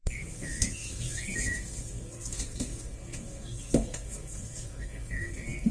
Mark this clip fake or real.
fake